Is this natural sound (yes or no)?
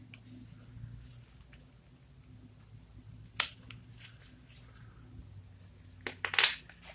yes